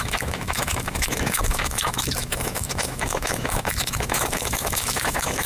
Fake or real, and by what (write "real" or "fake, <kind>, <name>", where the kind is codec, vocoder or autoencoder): fake, autoencoder, DAC-VAE